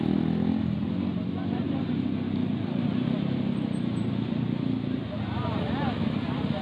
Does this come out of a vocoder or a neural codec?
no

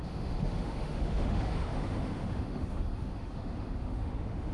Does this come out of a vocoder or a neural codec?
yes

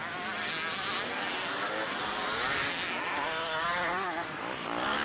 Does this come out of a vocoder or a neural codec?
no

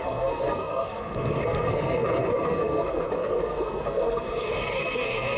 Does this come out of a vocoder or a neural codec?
yes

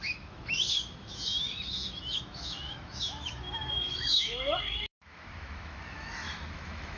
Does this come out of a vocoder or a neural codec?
yes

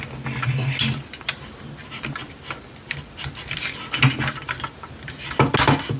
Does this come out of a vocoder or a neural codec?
no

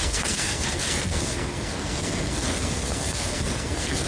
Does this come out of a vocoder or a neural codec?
yes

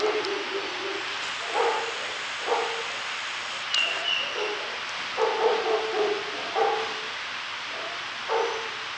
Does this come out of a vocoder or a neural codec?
no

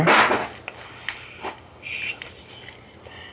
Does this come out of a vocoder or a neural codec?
no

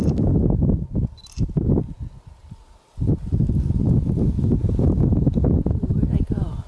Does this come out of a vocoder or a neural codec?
no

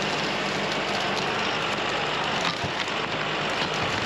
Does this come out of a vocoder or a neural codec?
no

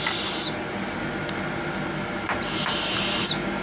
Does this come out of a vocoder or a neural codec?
no